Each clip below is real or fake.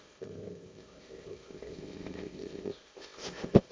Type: fake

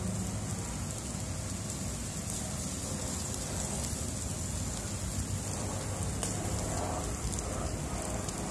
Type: real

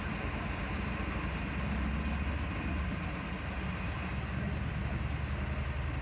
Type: real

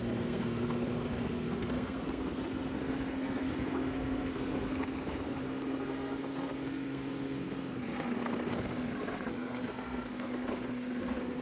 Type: fake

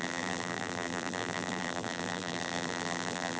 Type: fake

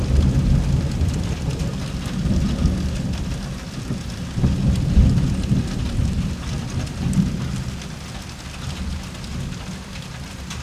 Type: real